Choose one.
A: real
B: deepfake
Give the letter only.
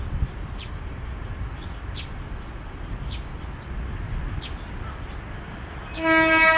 A